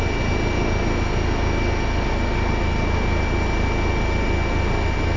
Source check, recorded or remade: recorded